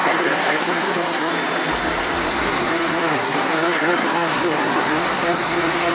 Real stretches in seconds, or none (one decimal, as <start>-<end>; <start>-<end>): 1.3-2.3